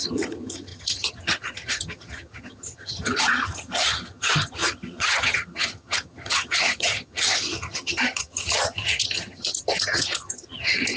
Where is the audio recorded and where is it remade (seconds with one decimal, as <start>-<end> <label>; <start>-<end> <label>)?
0.0-11.0 remade